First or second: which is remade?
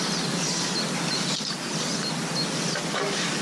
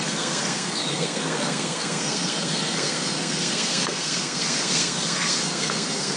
second